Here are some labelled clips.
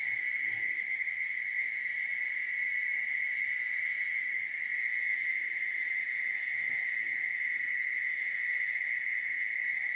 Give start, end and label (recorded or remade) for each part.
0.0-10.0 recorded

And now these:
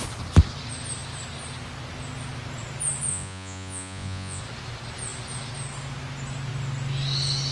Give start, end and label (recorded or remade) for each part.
0.0-3.1 recorded; 3.1-4.4 remade; 4.4-7.5 recorded

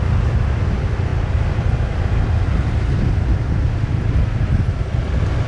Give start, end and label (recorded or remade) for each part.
0.0-5.5 recorded

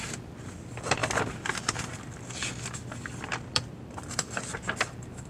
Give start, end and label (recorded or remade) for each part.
0.0-1.0 remade; 1.0-2.3 recorded; 2.3-5.3 remade

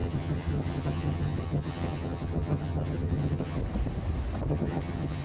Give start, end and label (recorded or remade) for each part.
0.0-3.6 remade; 3.6-4.5 recorded; 4.5-5.2 remade